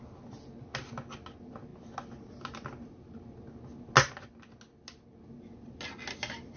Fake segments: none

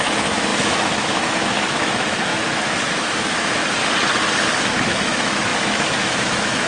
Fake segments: 0.0-3.6; 4.7-6.7